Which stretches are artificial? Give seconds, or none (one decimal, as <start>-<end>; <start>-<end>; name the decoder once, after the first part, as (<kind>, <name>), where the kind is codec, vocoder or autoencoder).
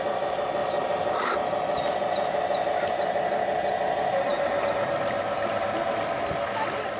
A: 0.6-1.2 (vocoder, BigVGAN v2); 4.3-5.5